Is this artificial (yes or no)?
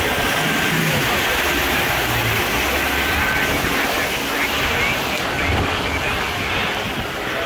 no